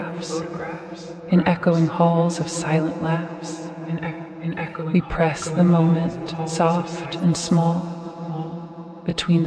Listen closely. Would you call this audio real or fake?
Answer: fake